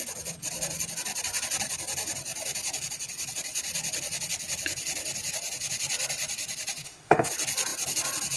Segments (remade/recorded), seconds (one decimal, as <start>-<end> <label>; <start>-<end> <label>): 0.0-6.8 recorded; 6.8-7.3 remade; 7.3-8.4 recorded